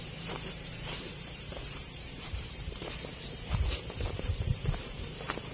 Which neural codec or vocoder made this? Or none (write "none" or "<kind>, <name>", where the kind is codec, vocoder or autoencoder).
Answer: vocoder, BigVGAN v2